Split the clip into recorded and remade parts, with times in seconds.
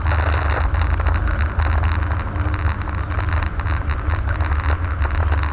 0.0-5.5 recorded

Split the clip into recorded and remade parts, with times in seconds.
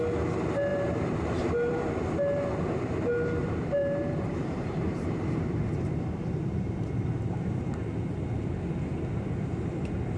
0.0-0.7 recorded; 0.7-2.5 remade; 2.5-3.8 recorded; 3.8-7.9 remade; 7.9-10.2 recorded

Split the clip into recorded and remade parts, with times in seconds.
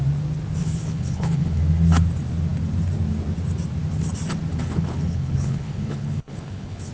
0.0-0.6 recorded; 0.6-1.6 remade; 1.6-4.5 recorded; 4.5-6.9 remade